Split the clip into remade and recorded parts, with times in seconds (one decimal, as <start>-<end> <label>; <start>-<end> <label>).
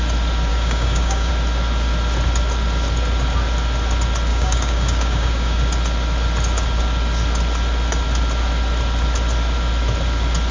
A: 0.0-0.5 recorded; 0.5-1.3 remade; 1.3-4.3 recorded; 4.3-5.6 remade; 5.6-10.5 recorded